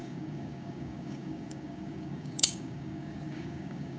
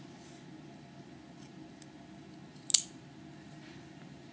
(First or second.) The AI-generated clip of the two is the first